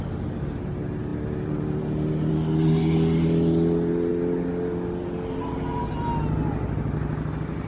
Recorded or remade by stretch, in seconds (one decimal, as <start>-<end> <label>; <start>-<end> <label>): 0.0-7.7 recorded